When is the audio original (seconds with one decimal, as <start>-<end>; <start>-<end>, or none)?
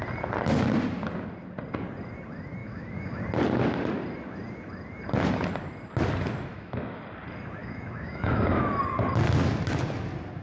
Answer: 0.0-2.6; 3.2-6.5; 7.0-7.6; 8.8-10.4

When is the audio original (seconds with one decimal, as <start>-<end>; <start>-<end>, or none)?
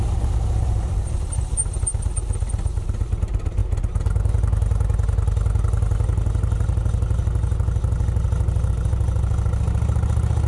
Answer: 1.6-3.2; 3.6-8.7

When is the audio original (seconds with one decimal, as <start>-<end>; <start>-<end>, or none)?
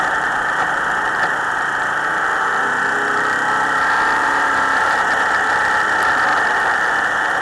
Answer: 0.0-4.2; 5.1-7.4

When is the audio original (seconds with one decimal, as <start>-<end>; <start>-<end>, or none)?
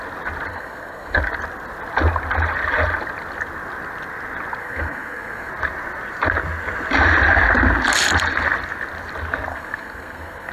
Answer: 0.0-0.5; 1.2-4.6; 5.5-9.5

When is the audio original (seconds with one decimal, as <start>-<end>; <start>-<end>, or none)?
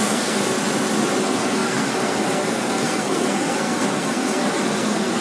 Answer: 0.4-1.2